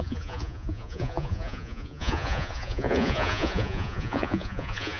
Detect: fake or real fake